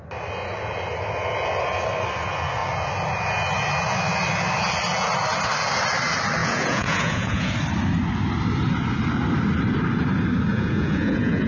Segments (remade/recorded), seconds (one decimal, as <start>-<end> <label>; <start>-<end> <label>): 0.0-6.4 recorded; 6.4-7.5 remade; 7.5-10.5 recorded; 10.5-11.5 remade